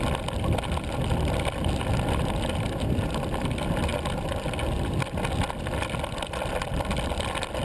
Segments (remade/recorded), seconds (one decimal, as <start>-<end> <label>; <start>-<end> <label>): 0.0-7.6 recorded